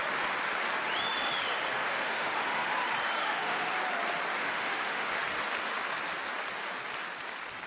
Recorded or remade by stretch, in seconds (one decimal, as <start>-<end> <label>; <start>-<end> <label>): 0.0-1.8 recorded; 1.8-2.7 remade; 2.7-3.2 recorded; 3.2-3.7 remade; 3.7-4.4 recorded; 4.4-5.1 remade; 5.1-7.7 recorded